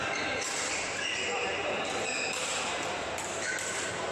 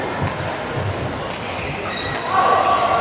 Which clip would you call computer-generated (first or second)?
first